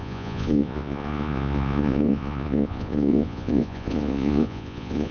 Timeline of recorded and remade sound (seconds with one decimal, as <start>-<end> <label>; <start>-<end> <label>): 0.0-5.1 remade